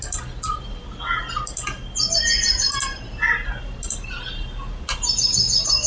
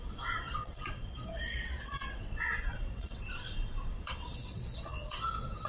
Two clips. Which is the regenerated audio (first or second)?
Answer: second